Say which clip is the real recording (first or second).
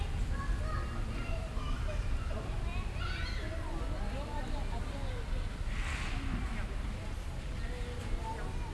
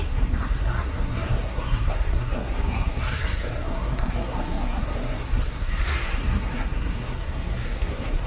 first